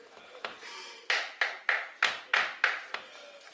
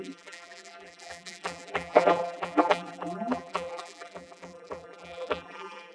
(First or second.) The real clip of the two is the first